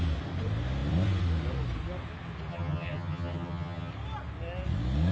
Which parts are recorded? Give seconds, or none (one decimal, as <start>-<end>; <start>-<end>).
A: 0.0-2.5; 3.9-5.1